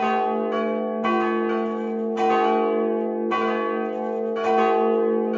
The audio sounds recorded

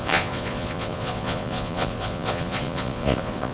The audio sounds remade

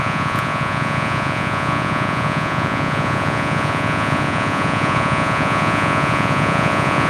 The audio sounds remade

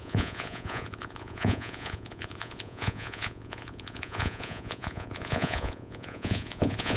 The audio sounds remade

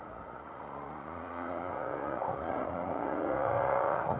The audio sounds remade